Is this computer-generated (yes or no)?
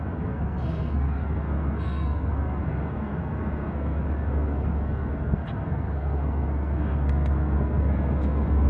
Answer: yes